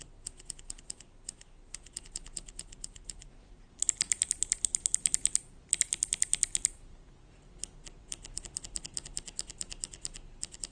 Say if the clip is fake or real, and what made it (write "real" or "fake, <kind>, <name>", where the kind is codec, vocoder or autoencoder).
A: real